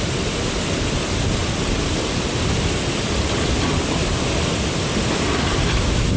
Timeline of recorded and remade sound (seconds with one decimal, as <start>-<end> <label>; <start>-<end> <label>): 0.0-6.2 recorded